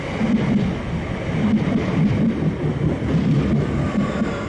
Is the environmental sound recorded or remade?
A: recorded